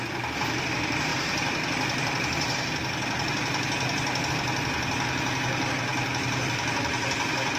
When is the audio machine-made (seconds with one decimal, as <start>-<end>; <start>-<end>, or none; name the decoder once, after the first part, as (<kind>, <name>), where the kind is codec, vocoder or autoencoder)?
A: none